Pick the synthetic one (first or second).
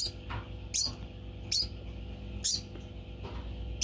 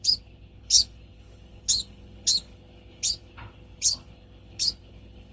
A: second